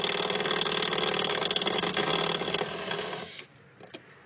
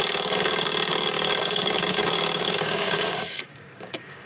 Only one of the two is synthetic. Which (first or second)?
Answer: second